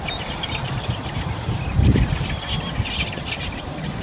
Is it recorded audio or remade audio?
recorded